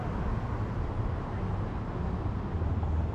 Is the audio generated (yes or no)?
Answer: no